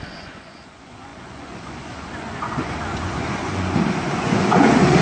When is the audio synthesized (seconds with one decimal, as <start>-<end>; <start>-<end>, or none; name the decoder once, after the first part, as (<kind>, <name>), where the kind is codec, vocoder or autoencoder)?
0.0-5.0 (vocoder, Vocos)

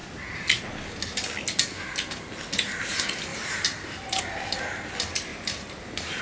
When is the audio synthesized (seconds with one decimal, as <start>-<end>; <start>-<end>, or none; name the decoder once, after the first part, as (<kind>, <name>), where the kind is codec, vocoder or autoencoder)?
3.3-4.2 (vocoder, BigVGAN v2); 5.3-6.2